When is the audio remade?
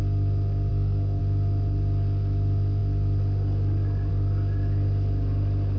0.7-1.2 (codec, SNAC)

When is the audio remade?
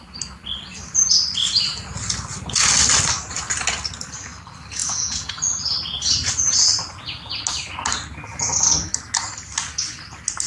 4.8-5.3 (vocoder, Vocos)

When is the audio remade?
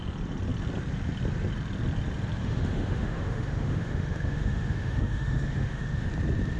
2.4-6.1 (autoencoder, DAC-VAE)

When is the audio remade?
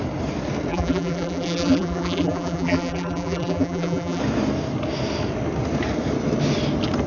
0.7-4.2 (vocoder, BigVGAN v2)